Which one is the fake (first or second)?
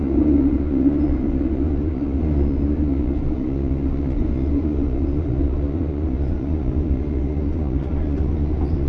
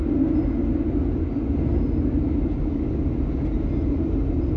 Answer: first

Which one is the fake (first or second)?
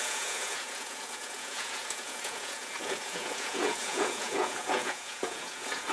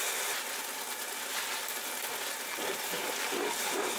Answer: first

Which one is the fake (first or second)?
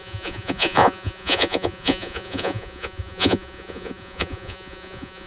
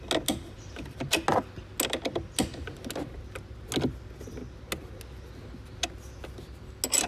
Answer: first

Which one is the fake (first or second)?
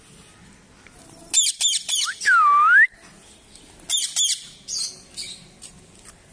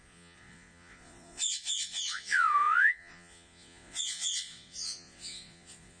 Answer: second